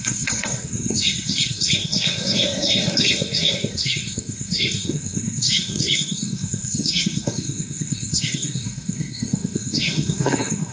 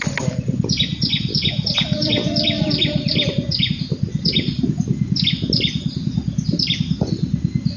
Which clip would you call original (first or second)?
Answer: second